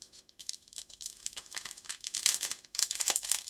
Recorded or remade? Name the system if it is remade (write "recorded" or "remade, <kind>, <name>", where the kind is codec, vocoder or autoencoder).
remade, autoencoder, DAC-VAE